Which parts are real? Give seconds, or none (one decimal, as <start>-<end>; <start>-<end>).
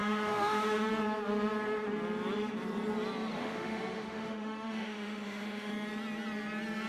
0.9-3.4; 5.7-6.9